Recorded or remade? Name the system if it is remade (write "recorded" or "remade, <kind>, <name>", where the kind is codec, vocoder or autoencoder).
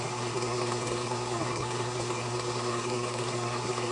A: remade, codec, SNAC